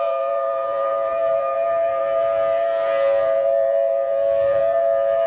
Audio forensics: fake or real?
fake